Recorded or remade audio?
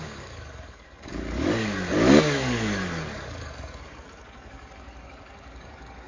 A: remade